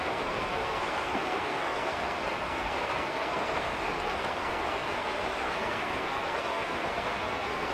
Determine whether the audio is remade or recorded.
remade